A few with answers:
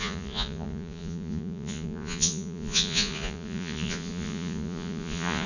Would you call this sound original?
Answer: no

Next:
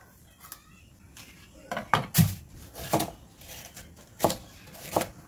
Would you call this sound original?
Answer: yes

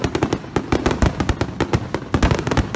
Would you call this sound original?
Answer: yes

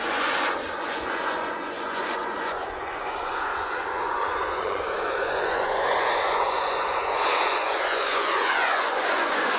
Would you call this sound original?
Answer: no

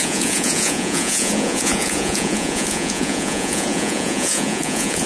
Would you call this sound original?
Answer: no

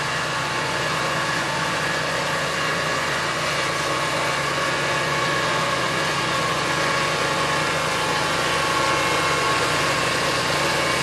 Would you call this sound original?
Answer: no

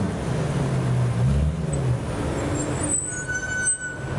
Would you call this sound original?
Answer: yes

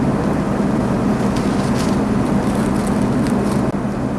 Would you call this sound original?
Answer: yes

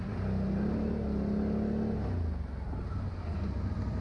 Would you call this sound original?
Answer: yes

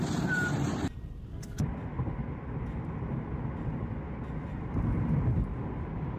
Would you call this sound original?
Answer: yes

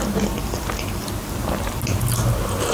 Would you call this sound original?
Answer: yes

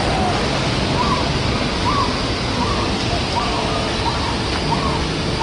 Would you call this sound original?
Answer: yes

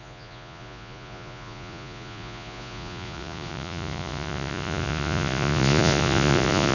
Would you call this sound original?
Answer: no